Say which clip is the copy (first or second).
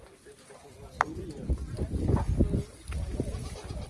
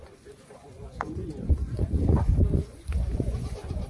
second